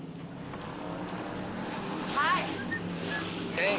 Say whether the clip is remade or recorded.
recorded